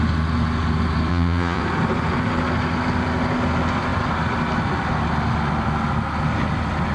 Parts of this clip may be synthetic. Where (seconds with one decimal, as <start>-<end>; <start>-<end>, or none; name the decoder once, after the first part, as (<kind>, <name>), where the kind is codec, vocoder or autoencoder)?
1.1-1.6 (vocoder, Vocos)